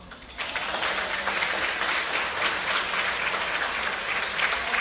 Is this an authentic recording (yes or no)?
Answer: yes